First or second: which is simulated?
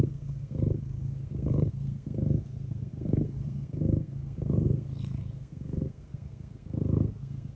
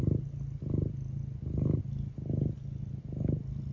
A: first